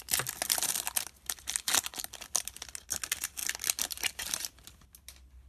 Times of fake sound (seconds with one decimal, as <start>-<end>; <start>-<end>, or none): none